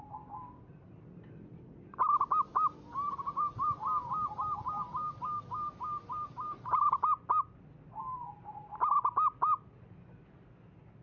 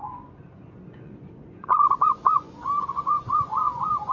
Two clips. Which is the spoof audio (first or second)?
second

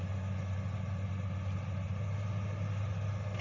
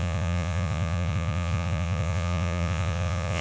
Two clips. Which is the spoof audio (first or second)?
second